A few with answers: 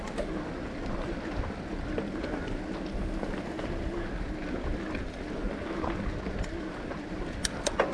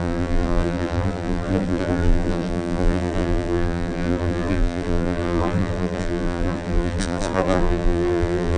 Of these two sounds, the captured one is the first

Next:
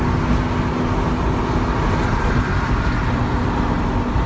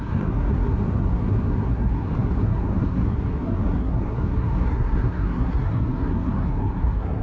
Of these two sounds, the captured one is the first